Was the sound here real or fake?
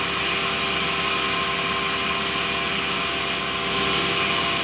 real